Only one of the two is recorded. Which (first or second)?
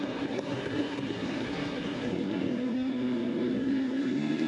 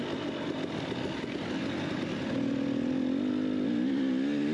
second